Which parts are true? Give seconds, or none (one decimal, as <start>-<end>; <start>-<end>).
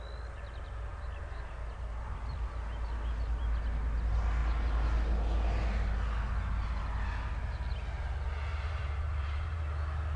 0.0-8.5; 9.6-10.2